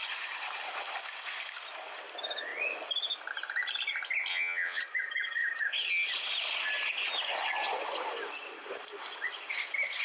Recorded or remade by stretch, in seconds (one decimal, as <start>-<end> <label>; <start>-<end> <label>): 0.0-4.3 recorded; 4.3-4.8 remade; 4.8-10.0 recorded